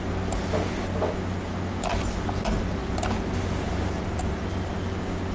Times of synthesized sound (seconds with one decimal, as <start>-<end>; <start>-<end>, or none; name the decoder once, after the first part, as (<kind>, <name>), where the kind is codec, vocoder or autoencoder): none